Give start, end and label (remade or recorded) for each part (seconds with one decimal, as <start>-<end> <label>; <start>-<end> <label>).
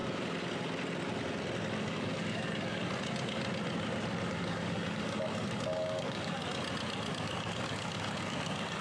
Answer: 0.0-1.8 recorded; 1.8-2.8 remade; 2.8-4.3 recorded; 4.3-6.4 remade; 6.4-7.1 recorded; 7.1-8.8 remade